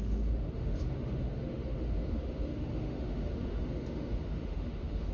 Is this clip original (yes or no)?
no